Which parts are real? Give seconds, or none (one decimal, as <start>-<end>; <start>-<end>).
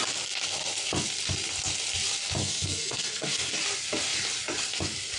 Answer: 0.0-2.4; 3.5-5.2